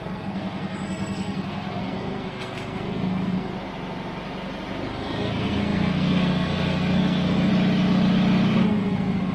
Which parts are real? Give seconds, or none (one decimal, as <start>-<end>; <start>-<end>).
3.5-4.9; 7.5-8.6